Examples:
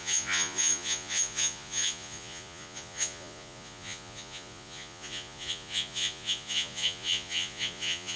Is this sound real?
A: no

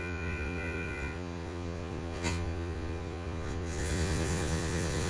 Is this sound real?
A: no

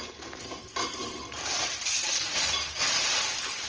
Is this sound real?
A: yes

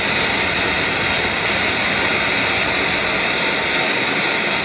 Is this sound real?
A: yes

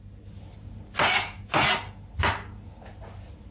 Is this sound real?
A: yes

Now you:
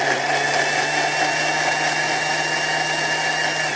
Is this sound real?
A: yes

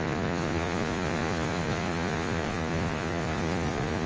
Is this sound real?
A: no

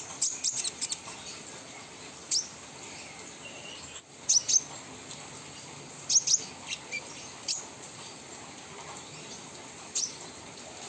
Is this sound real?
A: yes